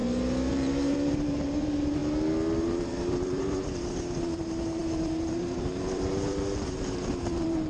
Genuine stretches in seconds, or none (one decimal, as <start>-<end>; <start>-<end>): 0.0-0.5; 2.0-2.6

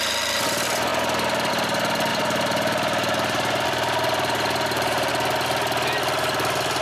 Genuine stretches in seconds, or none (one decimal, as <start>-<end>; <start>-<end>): 0.0-2.1; 5.1-6.8